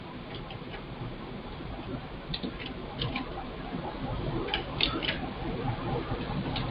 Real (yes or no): yes